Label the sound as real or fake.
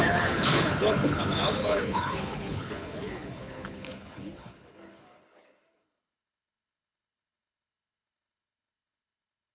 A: fake